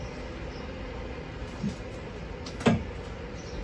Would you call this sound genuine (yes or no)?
yes